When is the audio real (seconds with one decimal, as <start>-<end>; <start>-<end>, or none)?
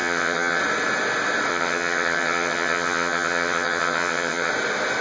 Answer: 0.6-1.5; 4.5-5.0